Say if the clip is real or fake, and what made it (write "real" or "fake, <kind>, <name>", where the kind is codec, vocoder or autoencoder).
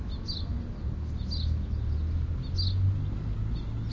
real